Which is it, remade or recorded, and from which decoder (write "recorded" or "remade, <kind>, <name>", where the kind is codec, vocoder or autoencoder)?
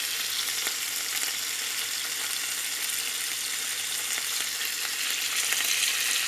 recorded